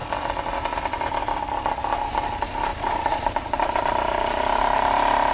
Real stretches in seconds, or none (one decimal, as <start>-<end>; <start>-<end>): 0.0-2.7; 4.4-5.3